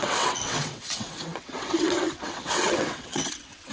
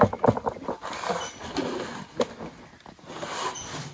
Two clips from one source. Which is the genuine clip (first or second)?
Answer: second